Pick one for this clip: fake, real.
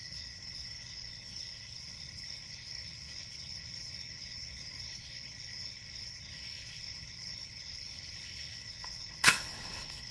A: fake